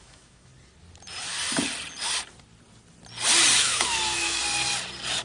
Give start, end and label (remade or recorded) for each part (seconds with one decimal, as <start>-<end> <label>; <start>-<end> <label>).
0.0-0.5 remade; 0.5-3.6 recorded; 3.6-4.4 remade; 4.4-5.2 recorded